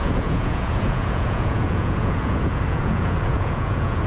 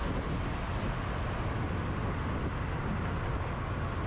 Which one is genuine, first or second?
second